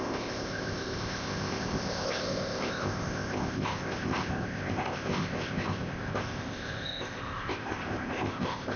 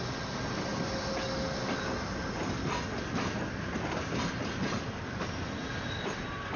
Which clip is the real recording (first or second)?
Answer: second